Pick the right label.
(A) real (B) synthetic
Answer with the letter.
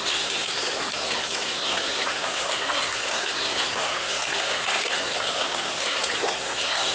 B